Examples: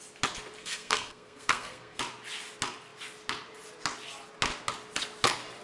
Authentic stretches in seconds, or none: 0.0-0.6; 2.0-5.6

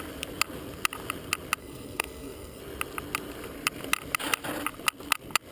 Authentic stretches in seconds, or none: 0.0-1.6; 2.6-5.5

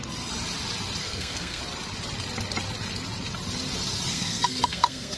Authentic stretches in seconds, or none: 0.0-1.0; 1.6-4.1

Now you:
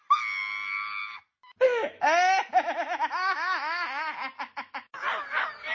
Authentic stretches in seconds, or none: 0.0-5.7